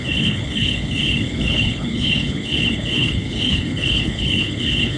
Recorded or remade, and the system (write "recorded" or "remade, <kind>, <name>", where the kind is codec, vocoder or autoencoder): remade, codec, HILCodec